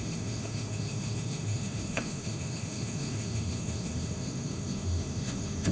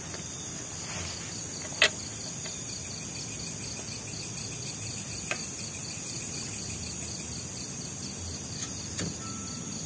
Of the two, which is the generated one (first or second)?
first